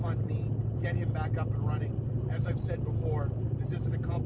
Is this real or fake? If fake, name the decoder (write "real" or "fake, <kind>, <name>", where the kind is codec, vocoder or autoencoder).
real